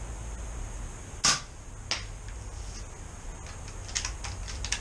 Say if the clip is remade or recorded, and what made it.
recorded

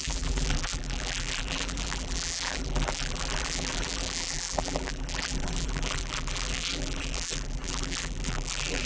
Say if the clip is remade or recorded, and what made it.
remade, vocoder, BigVGAN v2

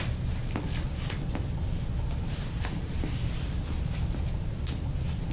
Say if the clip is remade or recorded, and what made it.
recorded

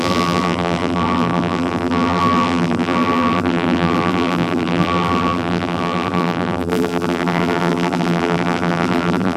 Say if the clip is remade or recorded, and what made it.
remade, vocoder, BigVGAN v2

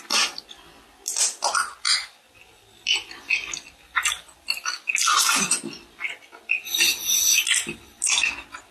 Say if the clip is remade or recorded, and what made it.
recorded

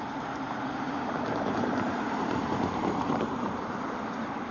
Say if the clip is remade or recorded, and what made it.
remade, vocoder, BigVGAN v2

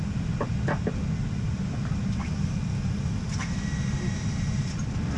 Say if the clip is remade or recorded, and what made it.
recorded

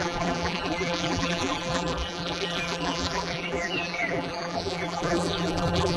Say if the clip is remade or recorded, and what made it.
remade, vocoder, BigVGAN v2